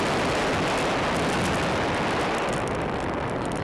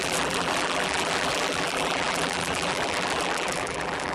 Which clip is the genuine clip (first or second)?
first